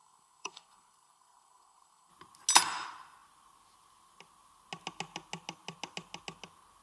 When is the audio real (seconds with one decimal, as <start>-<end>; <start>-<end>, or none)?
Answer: 2.1-6.8